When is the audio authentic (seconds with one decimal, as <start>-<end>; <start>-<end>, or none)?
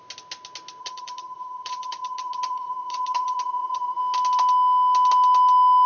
0.0-0.8; 4.0-5.9